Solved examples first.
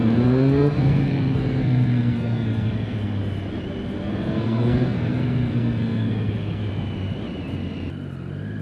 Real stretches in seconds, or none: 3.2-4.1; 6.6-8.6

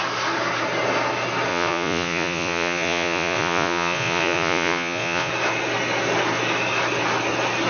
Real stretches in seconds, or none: 0.0-1.5; 5.3-7.7

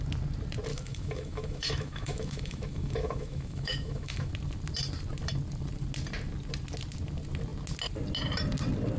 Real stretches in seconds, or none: 0.0-0.7; 4.3-9.0

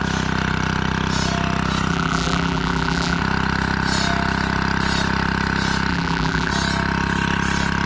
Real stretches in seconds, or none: 0.0-1.9; 3.2-5.9; 6.5-7.9

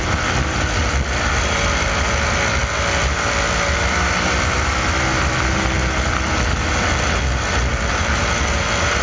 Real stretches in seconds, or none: 0.0-9.0

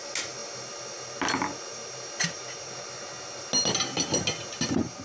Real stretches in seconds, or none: 0.0-5.0

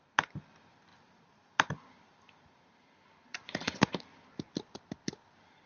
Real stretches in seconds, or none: 0.0-0.9; 4.3-5.7